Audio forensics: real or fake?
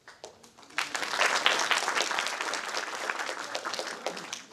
real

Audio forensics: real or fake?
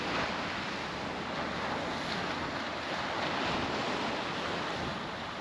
real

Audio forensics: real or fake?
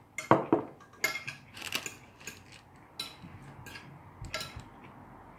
real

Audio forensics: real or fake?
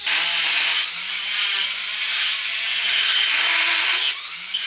real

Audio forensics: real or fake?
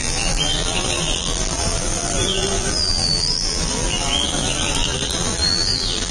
fake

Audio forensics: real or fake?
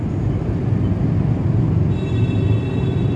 real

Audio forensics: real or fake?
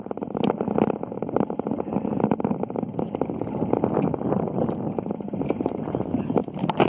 real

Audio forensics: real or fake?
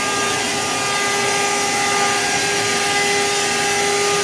real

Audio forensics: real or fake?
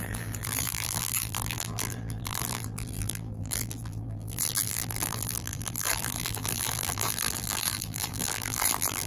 fake